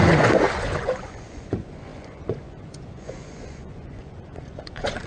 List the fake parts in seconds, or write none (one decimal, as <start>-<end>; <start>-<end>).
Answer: 0.0-5.1